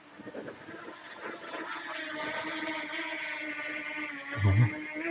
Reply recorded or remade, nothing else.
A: recorded